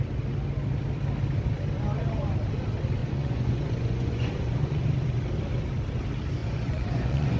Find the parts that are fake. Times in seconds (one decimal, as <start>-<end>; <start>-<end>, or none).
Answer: 3.0-4.8; 6.4-7.4